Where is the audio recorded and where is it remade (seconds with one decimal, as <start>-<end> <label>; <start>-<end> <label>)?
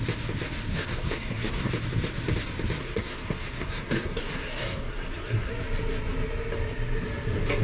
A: 0.0-0.7 recorded; 0.7-1.7 remade; 1.7-2.8 recorded; 2.8-5.5 remade; 5.5-7.6 recorded